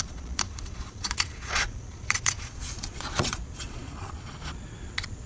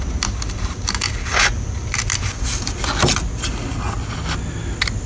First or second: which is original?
second